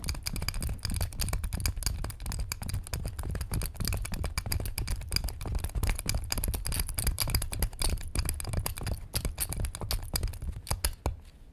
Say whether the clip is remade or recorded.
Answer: recorded